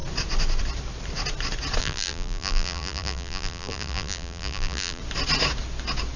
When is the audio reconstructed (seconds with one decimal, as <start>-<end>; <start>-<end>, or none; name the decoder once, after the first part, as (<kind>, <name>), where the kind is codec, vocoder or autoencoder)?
1.8-5.0 (vocoder, BigVGAN v2)